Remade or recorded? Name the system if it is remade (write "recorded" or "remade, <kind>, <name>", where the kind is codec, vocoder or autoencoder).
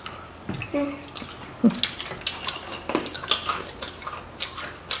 recorded